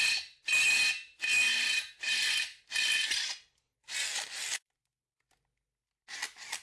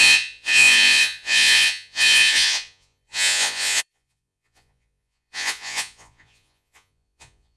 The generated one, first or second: second